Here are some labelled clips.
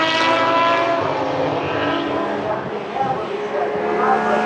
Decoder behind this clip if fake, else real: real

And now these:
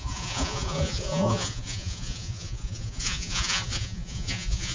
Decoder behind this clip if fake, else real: fake, vocoder, Vocos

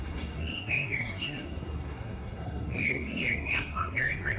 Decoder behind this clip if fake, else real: fake, codec, SNAC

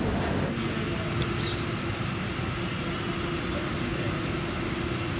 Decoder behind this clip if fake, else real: real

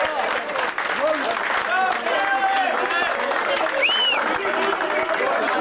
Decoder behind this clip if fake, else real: real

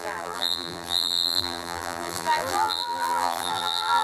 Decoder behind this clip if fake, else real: fake, vocoder, BigVGAN v2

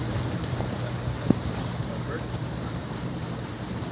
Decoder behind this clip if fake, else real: fake, vocoder, BigVGAN v2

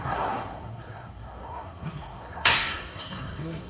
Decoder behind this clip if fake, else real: fake, codec, SNAC